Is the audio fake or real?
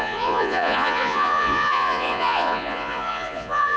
fake